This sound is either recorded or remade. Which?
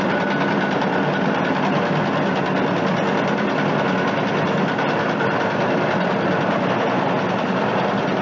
recorded